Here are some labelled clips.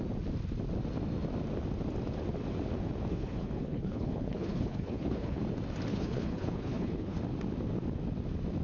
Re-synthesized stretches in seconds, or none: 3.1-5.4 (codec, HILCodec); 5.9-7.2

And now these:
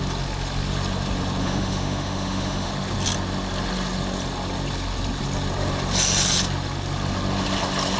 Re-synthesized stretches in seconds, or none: 1.4-2.7 (autoencoder, DAC-VAE)

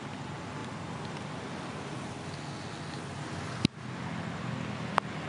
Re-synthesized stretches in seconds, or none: none

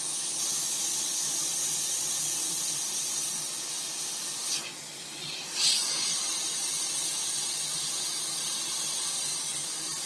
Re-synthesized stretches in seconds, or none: none

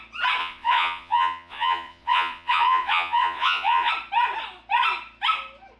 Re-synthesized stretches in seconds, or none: 0.4-3.9 (vocoder, Vocos)